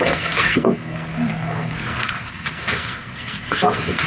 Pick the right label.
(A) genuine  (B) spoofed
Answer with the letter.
B